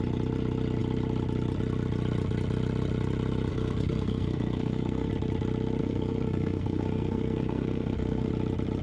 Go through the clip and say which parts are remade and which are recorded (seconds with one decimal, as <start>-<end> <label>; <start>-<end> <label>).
0.0-3.5 recorded; 3.5-5.1 remade; 5.1-5.8 recorded; 5.8-8.3 remade; 8.3-8.8 recorded